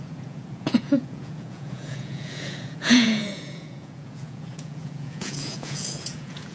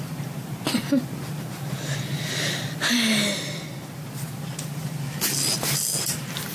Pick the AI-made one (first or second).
first